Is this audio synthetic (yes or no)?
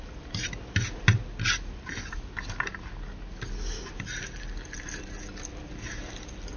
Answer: no